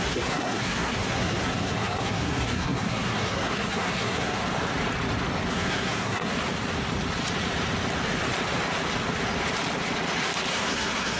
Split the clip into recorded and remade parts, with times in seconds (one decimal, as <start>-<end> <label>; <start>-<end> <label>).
0.0-4.4 remade; 4.4-5.5 recorded; 5.5-6.3 remade; 6.3-10.5 recorded; 10.5-11.2 remade